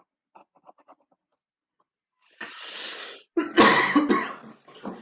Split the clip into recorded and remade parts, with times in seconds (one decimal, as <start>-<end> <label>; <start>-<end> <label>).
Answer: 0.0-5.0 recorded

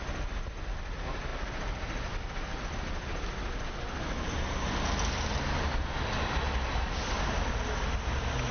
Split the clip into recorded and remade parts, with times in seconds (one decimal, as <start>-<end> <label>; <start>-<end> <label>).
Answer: 0.0-8.5 recorded

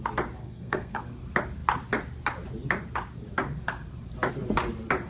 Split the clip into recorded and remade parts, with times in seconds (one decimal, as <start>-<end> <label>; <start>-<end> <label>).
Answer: 0.0-0.4 recorded; 0.4-1.0 remade; 1.0-5.1 recorded

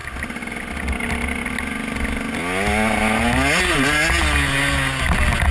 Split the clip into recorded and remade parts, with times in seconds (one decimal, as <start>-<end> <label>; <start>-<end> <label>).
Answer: 0.0-5.5 recorded

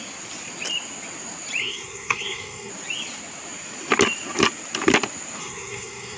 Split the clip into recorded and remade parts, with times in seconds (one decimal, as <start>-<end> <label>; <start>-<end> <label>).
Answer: 0.0-1.6 recorded; 1.6-2.7 remade; 2.7-5.4 recorded; 5.4-6.2 remade